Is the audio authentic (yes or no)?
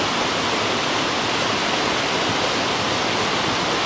yes